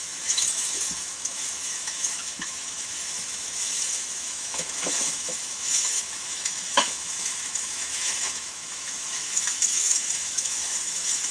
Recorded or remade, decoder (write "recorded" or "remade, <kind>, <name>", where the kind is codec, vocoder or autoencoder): remade, autoencoder, DAC-VAE